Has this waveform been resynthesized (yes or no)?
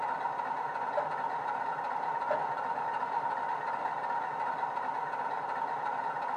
no